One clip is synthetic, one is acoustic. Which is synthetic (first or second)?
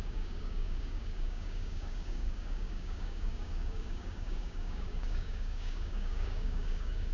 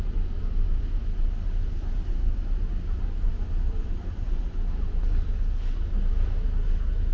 first